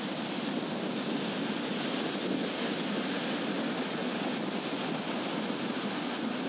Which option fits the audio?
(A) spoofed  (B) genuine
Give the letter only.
B